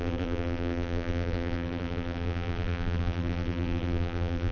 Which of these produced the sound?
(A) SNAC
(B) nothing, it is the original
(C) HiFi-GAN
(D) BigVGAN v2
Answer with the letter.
D